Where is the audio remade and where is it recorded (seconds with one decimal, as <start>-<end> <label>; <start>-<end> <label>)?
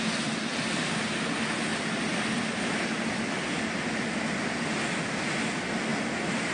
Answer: 0.0-6.5 recorded